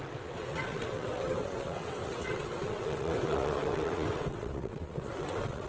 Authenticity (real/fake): fake